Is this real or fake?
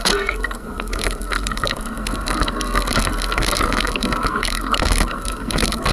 fake